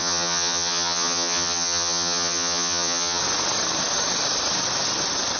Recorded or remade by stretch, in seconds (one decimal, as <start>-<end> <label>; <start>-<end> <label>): 0.0-3.2 remade; 3.2-5.4 recorded